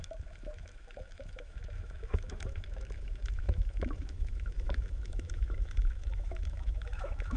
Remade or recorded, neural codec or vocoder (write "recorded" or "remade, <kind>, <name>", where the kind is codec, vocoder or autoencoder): remade, autoencoder, DAC-VAE